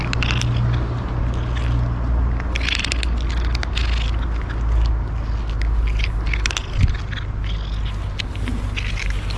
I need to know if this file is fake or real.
real